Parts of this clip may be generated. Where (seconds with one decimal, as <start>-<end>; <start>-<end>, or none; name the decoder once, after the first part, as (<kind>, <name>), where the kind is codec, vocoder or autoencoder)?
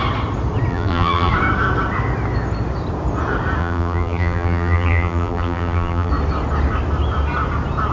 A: 0.7-1.3 (vocoder, BigVGAN v2); 3.6-6.1